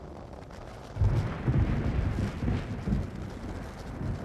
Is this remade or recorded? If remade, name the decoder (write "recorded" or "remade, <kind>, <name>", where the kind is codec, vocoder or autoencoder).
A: recorded